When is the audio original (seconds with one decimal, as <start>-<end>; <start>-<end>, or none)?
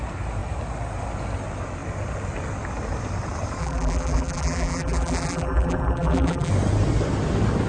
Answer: 0.0-3.6; 6.5-7.7